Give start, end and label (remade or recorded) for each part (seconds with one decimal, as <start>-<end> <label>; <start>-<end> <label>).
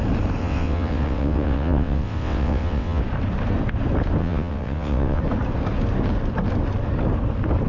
0.0-0.4 recorded; 0.4-3.0 remade; 3.0-4.2 recorded; 4.2-5.2 remade; 5.2-7.7 recorded